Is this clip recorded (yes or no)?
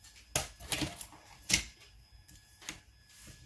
yes